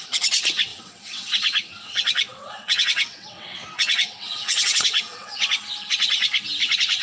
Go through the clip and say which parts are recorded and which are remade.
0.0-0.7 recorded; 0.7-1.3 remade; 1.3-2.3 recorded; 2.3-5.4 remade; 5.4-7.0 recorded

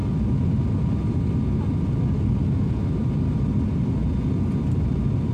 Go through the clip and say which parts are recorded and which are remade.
0.0-5.3 recorded

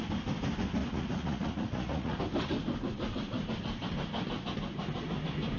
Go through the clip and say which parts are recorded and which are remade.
0.0-0.8 recorded; 0.8-2.2 remade; 2.2-5.6 recorded

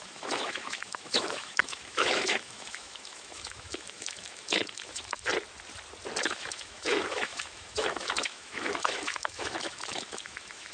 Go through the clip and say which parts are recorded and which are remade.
0.0-5.3 remade; 5.3-6.2 recorded; 6.2-10.7 remade

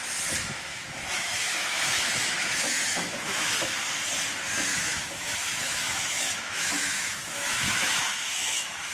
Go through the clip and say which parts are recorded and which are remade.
0.0-0.7 recorded; 0.7-3.7 remade; 3.7-4.7 recorded; 4.7-8.9 remade

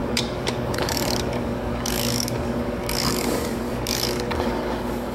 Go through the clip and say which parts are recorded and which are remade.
0.0-5.1 remade

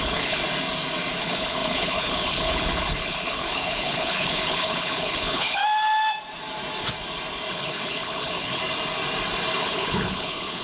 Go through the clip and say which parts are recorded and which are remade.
0.0-0.4 remade; 0.4-1.2 recorded; 1.2-5.6 remade; 5.6-7.5 recorded; 7.5-8.6 remade; 8.6-9.6 recorded; 9.6-10.6 remade